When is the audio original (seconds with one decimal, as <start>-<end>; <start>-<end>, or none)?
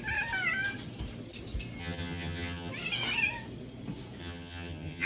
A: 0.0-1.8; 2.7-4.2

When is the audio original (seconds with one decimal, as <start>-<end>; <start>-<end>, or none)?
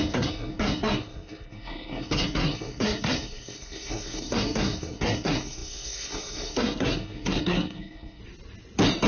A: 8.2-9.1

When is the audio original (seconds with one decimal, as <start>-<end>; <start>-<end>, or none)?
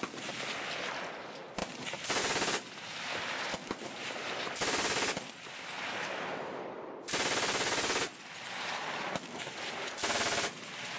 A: 0.0-11.0